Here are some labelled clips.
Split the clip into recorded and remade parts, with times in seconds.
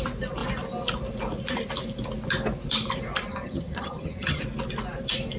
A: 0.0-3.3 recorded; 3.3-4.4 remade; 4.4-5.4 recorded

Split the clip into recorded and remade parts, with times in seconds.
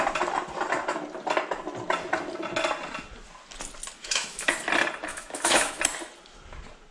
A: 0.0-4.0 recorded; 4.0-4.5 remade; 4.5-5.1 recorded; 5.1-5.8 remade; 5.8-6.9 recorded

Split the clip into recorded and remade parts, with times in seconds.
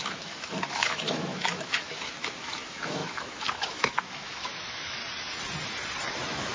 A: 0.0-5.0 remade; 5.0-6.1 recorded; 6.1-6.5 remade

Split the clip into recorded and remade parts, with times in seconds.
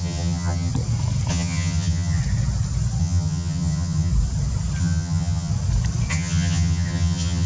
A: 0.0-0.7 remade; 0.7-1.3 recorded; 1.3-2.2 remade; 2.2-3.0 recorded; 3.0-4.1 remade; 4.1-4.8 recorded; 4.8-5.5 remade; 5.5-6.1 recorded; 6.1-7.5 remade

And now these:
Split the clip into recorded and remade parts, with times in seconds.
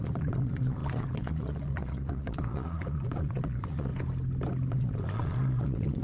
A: 0.0-3.9 remade; 3.9-4.7 recorded; 4.7-6.0 remade